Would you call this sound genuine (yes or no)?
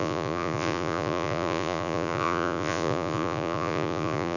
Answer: no